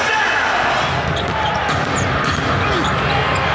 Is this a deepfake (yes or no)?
no